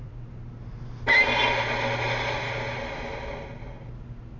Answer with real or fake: real